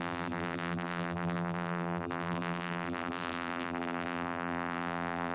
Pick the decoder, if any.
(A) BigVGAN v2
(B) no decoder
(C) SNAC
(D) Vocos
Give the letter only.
A